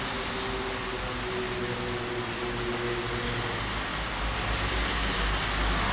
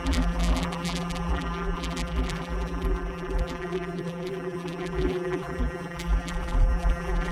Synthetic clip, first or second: second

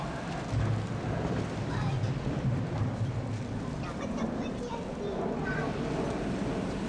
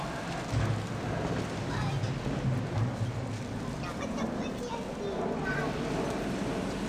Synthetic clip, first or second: first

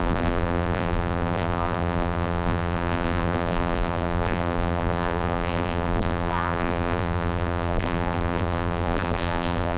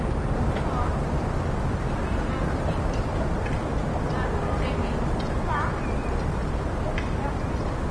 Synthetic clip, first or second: first